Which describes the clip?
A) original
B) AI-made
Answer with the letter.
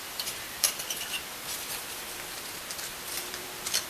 B